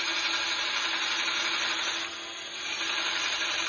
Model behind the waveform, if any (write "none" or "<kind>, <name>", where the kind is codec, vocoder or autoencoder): none